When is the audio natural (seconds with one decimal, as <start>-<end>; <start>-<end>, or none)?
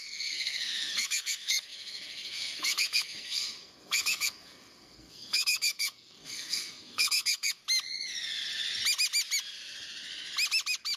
7.6-11.0